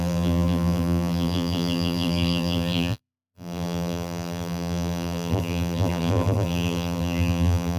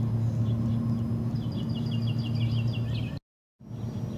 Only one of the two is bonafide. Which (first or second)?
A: second